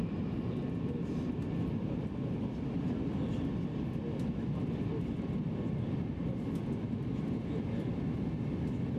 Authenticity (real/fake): real